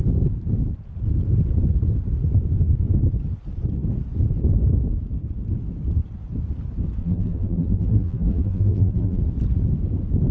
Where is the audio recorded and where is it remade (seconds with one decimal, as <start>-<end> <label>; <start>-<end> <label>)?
0.0-7.0 recorded; 7.0-9.2 remade; 9.2-10.3 recorded